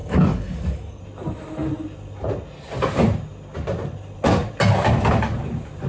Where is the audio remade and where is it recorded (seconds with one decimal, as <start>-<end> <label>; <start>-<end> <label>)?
0.0-1.0 remade; 1.0-5.9 recorded